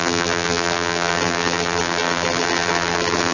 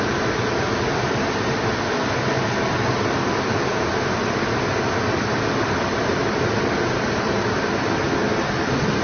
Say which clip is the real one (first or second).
second